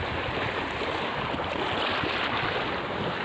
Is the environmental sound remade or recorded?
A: recorded